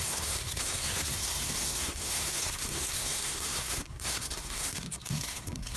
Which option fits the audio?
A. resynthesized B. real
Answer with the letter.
A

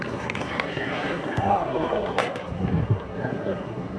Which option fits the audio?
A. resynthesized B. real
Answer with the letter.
A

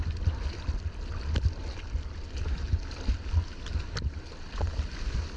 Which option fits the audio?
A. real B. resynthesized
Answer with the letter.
A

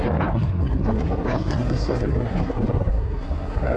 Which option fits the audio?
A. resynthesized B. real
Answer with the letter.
A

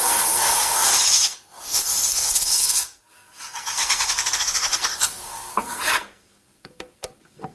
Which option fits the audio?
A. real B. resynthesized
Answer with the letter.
B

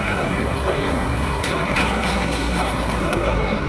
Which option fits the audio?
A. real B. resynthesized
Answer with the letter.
B